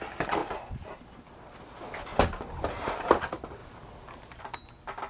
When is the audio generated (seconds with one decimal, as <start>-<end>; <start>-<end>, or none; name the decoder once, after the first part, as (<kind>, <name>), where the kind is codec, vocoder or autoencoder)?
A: 0.4-1.0 (vocoder, BigVGAN v2); 2.1-3.2

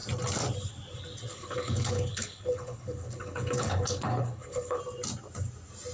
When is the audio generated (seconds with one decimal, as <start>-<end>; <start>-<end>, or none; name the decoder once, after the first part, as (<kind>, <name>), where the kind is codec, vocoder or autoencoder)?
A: 1.3-4.8 (codec, HILCodec)

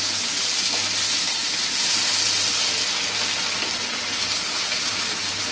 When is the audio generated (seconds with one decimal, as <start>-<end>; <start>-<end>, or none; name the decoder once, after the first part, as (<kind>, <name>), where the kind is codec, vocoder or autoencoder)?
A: none

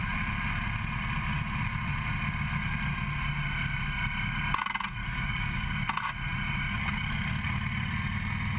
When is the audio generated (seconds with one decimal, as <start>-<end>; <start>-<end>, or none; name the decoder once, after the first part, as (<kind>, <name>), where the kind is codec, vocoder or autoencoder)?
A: 5.0-5.7 (codec, DAC)

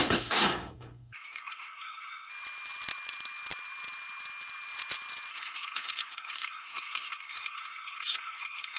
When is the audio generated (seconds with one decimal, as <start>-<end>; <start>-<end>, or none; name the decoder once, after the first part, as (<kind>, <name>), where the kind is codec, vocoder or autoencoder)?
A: 0.0-2.3 (codec, SNAC); 5.3-8.8

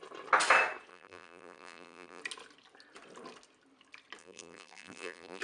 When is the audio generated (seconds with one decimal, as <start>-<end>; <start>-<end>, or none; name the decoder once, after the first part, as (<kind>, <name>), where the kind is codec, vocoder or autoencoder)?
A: 0.9-2.2 (vocoder, BigVGAN v2); 4.2-5.4

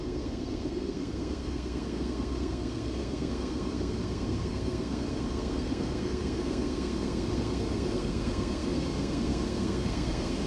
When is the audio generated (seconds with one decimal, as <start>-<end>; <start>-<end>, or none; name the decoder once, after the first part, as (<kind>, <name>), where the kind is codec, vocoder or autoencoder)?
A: 0.0-10.5 (codec, SNAC)

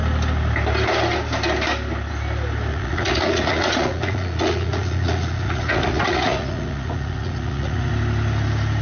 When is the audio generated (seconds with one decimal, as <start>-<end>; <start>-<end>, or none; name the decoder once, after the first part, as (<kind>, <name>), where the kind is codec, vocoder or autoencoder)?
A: 2.7-7.9 (vocoder, Vocos)